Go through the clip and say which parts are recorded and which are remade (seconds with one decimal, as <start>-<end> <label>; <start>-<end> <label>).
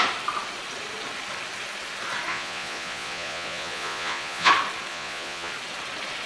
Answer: 0.0-2.3 recorded; 2.3-4.5 remade; 4.5-4.9 recorded; 4.9-5.5 remade; 5.5-6.3 recorded